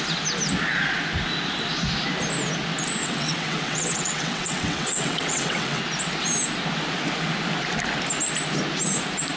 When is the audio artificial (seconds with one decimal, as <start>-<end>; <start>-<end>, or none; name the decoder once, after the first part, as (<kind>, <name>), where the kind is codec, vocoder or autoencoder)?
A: 3.0-5.8 (vocoder, WaveNeXt)